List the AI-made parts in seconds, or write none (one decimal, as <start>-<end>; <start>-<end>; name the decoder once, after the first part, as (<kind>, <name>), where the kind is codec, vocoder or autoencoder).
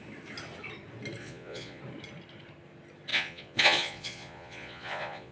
1.2-1.8 (vocoder, Vocos); 3.1-5.3